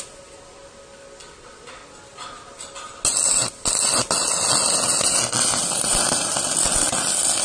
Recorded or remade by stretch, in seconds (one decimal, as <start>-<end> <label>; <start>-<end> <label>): 0.0-7.4 recorded